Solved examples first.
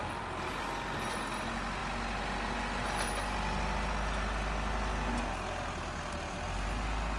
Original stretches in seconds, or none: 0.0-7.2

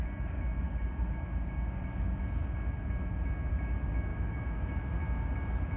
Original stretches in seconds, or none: 0.0-4.1; 4.7-5.8

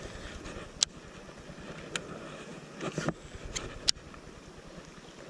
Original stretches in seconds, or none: 0.0-5.3